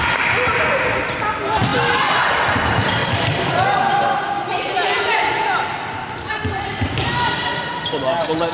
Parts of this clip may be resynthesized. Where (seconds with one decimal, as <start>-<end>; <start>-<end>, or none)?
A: 3.0-6.8